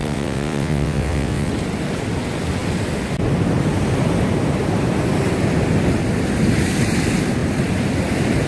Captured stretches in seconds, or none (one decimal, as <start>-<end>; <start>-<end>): 1.5-8.5